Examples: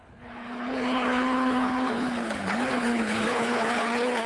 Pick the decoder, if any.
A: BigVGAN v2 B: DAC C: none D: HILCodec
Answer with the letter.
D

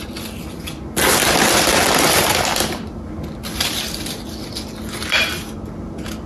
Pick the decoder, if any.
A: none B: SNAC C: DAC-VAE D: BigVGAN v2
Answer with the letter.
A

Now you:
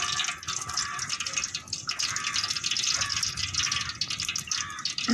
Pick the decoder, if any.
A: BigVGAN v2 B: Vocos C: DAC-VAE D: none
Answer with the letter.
D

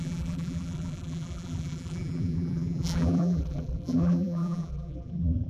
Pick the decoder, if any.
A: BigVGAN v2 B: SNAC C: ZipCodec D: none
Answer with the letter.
A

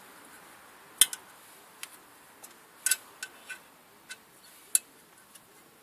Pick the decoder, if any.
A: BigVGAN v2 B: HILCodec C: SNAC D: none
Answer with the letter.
D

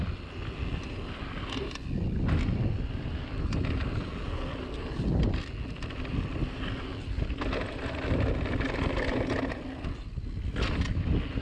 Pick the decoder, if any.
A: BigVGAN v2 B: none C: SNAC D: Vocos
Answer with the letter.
B